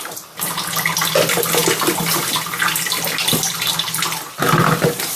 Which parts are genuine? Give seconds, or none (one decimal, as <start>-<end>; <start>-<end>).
0.0-5.2